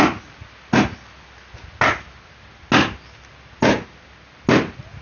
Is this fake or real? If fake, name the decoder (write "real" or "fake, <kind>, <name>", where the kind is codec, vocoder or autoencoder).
real